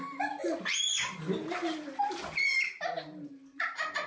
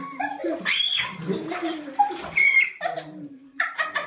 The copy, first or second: second